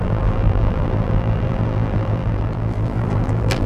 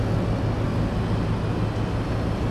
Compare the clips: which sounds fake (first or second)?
first